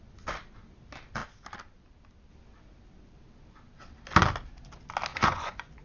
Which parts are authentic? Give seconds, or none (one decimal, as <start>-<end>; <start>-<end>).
0.0-5.1